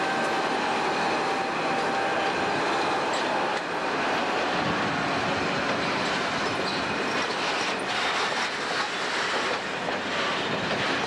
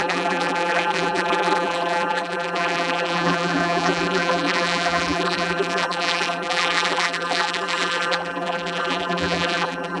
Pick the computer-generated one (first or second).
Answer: second